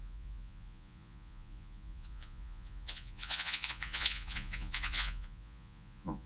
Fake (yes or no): yes